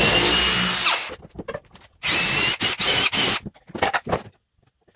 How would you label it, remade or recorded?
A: recorded